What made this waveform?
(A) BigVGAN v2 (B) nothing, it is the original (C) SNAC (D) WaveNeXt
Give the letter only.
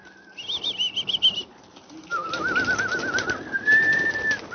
B